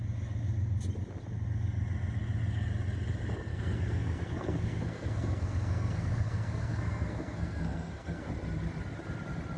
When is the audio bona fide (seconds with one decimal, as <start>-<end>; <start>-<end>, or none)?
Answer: 0.0-3.5; 8.3-9.6